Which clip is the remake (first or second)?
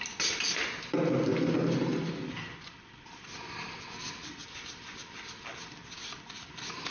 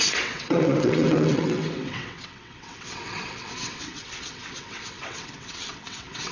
second